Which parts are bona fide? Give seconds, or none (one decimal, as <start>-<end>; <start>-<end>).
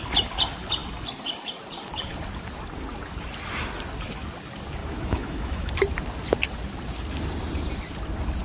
0.0-4.8; 5.7-8.4